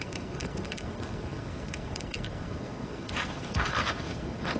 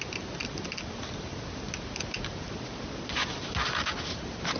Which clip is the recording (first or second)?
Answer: second